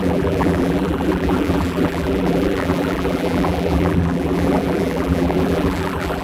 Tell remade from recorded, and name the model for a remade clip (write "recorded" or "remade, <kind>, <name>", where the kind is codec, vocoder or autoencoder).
remade, vocoder, BigVGAN v2